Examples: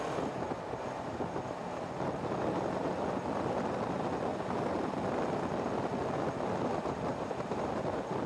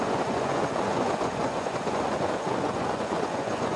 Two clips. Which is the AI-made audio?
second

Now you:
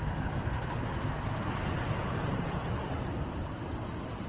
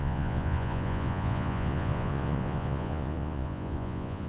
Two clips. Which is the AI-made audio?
second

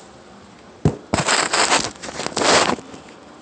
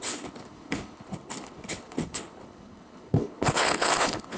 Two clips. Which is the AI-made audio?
second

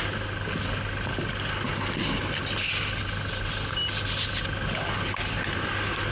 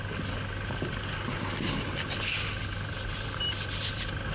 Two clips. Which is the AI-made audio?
second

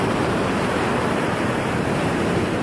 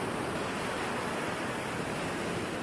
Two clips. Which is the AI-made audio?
first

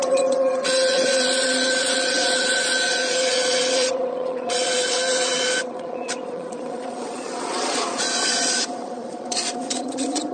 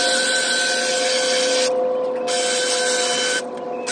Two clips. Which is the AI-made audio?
first